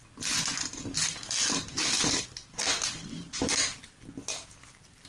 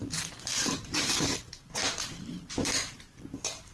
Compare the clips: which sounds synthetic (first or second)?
second